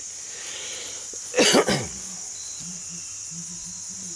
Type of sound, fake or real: real